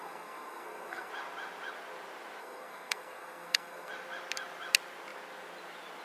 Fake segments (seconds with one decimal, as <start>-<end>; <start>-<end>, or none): 0.0-1.1; 2.4-3.9